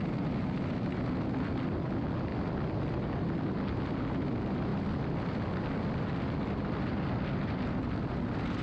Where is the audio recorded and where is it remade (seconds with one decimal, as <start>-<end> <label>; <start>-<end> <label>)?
0.0-8.6 recorded